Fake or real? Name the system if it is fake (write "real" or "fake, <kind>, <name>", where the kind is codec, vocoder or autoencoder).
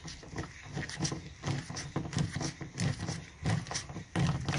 real